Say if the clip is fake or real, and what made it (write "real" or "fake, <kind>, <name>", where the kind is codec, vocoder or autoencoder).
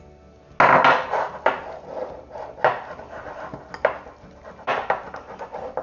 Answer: real